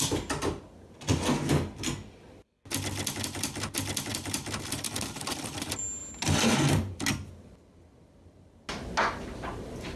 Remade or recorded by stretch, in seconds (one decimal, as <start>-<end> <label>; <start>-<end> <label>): 0.0-10.0 recorded